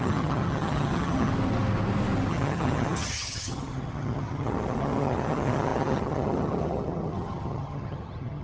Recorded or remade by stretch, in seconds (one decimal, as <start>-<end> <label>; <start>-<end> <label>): 0.0-1.3 remade; 1.3-2.3 recorded; 2.3-8.4 remade